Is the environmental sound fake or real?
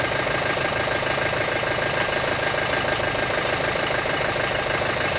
fake